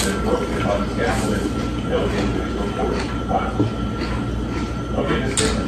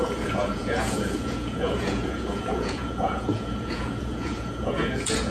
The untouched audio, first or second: first